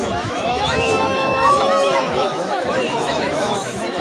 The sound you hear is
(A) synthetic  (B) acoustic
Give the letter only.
A